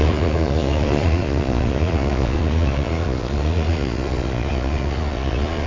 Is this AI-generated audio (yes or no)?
yes